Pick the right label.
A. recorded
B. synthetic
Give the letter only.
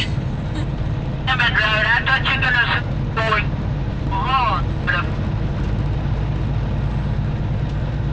A